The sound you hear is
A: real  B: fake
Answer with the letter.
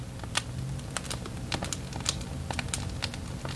A